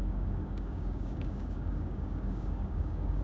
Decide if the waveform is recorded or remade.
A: remade